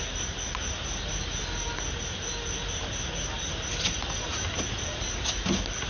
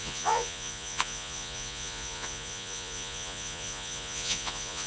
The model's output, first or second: second